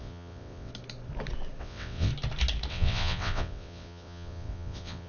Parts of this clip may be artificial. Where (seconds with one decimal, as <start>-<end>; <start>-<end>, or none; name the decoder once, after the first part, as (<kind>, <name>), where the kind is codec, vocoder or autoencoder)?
0.0-0.7 (vocoder, WaveNeXt); 1.6-2.1; 2.7-5.1